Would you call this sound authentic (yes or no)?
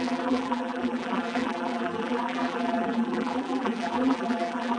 no